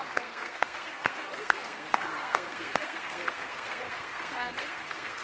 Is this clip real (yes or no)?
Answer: no